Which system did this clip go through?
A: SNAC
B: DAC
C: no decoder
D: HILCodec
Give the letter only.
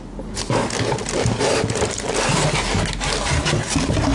C